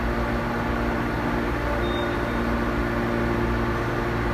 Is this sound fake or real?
real